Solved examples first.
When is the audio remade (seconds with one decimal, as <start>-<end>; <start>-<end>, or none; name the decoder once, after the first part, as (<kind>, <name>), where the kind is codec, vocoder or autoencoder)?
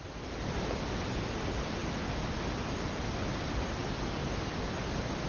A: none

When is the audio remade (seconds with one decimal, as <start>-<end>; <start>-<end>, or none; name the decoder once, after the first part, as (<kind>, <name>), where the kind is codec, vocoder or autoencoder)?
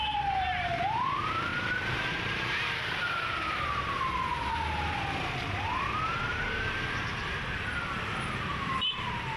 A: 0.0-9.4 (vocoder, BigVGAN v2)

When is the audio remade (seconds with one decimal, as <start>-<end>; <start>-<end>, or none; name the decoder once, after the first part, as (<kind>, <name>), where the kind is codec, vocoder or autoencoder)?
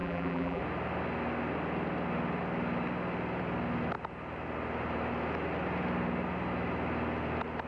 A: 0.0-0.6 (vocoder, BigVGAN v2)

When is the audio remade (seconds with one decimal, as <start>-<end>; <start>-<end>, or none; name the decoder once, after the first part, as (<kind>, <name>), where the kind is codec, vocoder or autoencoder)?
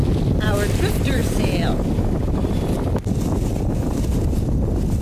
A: 0.7-5.0 (vocoder, BigVGAN v2)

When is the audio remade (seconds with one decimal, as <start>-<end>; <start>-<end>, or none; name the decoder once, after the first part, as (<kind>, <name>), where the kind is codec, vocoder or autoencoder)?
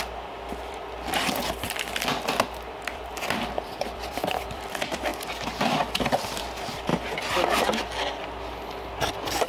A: 0.0-1.4 (vocoder, BigVGAN v2); 2.7-5.1; 6.4-6.9; 9.1-9.5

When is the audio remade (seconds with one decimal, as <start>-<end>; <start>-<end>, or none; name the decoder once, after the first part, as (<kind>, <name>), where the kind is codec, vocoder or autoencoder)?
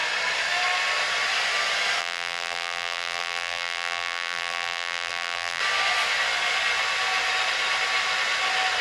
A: 2.0-5.6 (vocoder, BigVGAN v2)